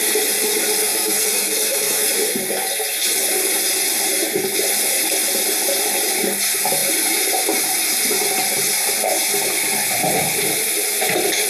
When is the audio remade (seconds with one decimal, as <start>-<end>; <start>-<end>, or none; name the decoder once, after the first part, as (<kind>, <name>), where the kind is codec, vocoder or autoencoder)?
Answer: 0.8-2.1 (codec, SNAC)